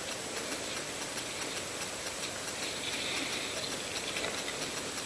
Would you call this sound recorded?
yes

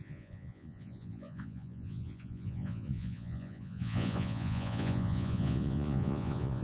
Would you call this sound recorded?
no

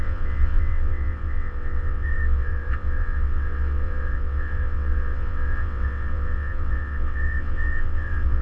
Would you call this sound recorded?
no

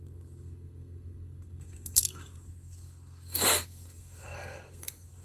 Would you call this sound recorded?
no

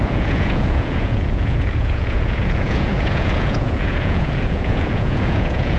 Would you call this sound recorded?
no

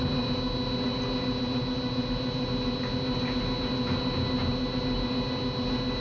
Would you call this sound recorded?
yes